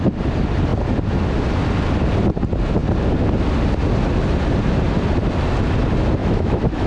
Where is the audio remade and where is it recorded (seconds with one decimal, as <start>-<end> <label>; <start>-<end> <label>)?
0.0-6.2 recorded; 6.2-6.9 remade